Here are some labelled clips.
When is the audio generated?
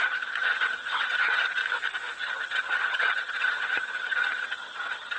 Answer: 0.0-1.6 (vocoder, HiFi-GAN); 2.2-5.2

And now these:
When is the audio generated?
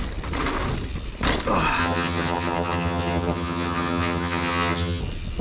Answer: 1.8-5.0 (vocoder, HiFi-GAN)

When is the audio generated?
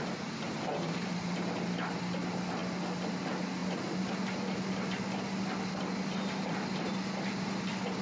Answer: none